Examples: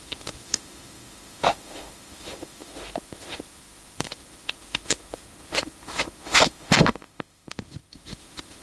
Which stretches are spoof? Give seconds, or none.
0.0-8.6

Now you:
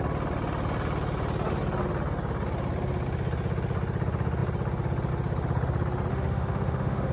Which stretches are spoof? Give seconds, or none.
6.1-7.1

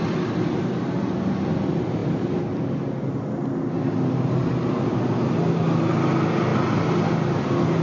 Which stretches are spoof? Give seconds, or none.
none